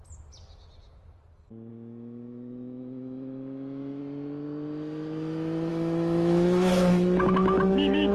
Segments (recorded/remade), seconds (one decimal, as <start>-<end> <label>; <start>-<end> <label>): 0.0-1.7 recorded; 1.7-4.0 remade; 4.0-5.7 recorded; 5.7-8.1 remade